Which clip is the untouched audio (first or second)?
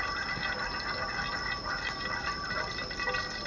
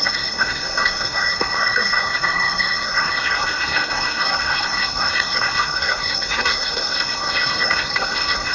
first